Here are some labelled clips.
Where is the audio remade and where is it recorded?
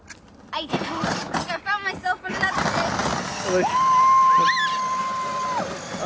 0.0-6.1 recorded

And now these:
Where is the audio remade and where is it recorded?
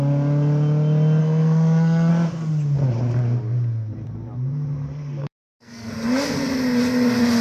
0.0-1.2 recorded; 1.2-2.1 remade; 2.1-5.2 recorded; 5.2-5.9 remade; 5.9-7.4 recorded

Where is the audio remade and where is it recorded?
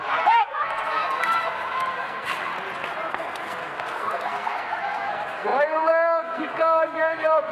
0.0-2.5 remade; 2.5-3.1 recorded; 3.1-7.5 remade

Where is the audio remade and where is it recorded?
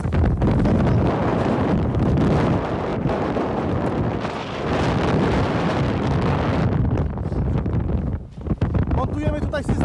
0.0-1.3 recorded; 1.3-2.0 remade; 2.0-2.9 recorded; 2.9-3.7 remade; 3.7-9.8 recorded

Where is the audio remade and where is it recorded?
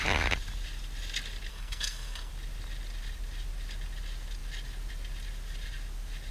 0.0-1.5 recorded; 1.5-2.3 remade; 2.3-6.3 recorded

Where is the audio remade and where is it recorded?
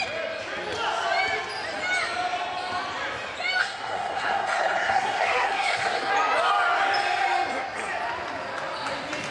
0.0-3.6 recorded; 3.6-6.1 remade; 6.1-9.3 recorded